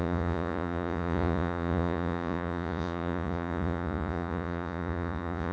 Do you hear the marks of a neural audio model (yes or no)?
yes